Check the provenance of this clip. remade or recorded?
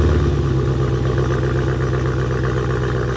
recorded